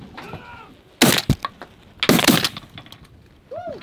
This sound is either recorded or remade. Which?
recorded